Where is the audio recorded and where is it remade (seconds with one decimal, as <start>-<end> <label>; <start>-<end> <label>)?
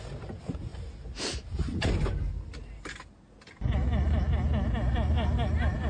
0.0-5.9 recorded